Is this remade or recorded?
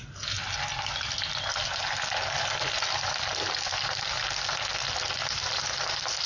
recorded